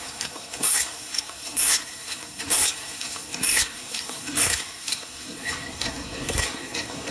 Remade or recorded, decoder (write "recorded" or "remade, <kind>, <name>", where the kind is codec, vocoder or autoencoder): remade, codec, SNAC